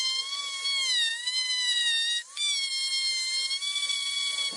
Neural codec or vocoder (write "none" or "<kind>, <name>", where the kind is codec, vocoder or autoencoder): none